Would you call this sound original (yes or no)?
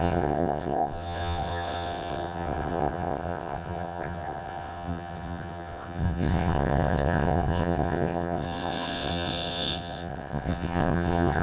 no